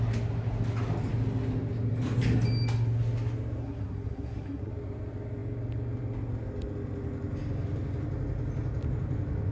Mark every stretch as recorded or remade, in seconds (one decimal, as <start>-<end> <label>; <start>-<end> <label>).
0.0-3.6 recorded; 3.6-4.7 remade; 4.7-9.5 recorded